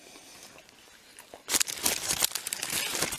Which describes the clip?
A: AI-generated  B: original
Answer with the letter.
B